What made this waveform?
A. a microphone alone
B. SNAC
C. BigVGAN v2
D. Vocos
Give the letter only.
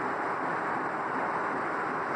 A